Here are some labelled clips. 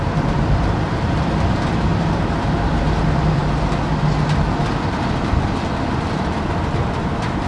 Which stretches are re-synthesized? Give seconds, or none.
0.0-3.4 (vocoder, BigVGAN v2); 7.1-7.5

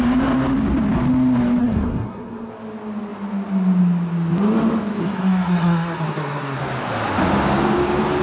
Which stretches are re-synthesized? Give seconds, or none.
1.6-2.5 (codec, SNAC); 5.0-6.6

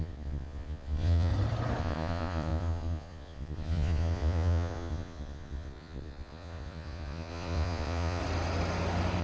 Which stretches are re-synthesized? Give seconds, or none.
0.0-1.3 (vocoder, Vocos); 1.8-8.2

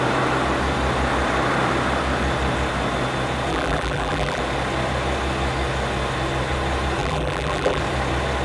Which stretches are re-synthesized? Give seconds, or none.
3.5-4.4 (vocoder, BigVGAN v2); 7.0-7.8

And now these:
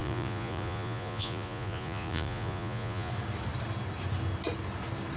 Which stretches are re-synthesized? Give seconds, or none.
0.0-3.1 (vocoder, Vocos)

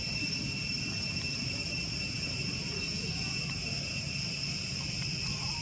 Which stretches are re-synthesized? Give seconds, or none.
none